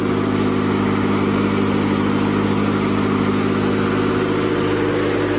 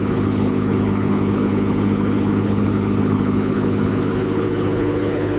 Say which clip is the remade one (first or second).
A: second